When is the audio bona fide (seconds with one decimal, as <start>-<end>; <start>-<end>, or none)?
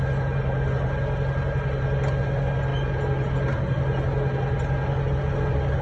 0.0-5.8